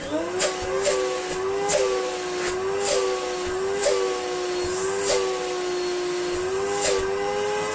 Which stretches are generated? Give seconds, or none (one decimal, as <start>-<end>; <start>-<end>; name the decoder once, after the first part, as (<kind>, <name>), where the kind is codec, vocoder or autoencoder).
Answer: none